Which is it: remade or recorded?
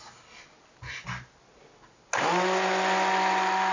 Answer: recorded